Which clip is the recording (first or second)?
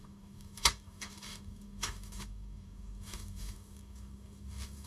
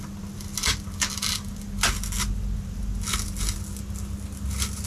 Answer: second